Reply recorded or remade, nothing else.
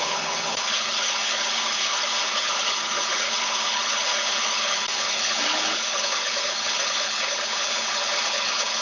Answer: remade